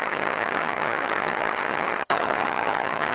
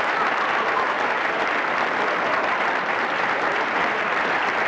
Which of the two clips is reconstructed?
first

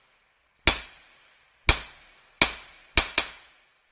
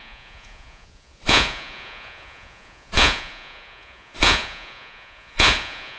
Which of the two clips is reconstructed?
second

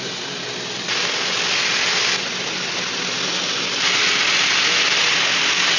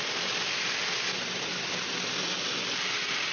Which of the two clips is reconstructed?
second